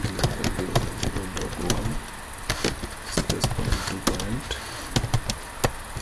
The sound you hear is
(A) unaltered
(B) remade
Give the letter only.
A